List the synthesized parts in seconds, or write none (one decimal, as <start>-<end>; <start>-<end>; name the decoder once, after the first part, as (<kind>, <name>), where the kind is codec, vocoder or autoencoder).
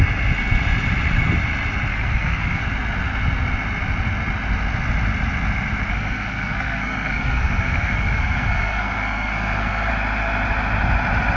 1.9-2.6 (codec, SNAC); 5.9-9.9